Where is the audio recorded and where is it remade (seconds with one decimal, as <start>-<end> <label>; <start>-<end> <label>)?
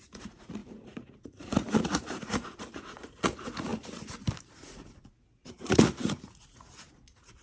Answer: 0.0-3.7 remade; 3.7-4.5 recorded; 4.5-7.4 remade